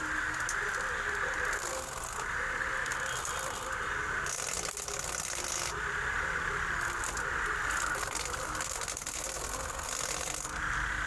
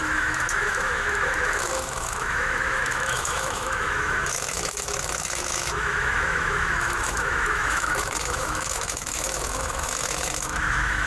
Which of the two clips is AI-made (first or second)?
second